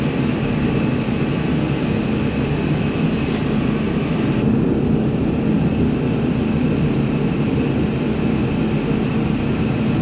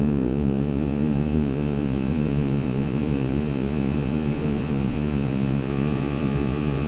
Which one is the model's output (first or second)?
second